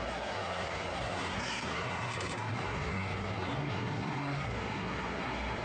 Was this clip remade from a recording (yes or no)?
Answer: yes